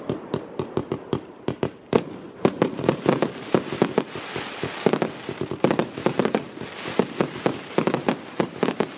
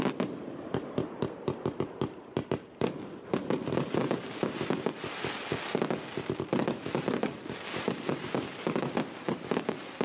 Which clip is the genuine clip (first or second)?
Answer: second